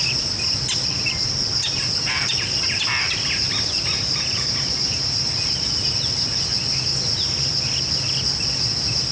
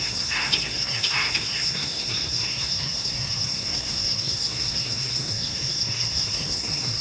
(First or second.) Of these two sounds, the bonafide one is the first